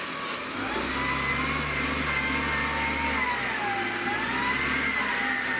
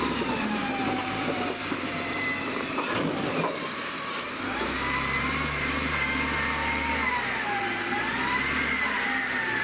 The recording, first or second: first